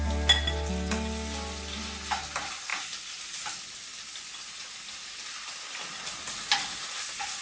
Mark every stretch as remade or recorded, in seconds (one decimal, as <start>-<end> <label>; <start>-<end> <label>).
0.0-7.4 recorded